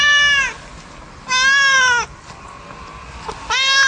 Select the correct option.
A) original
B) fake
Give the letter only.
A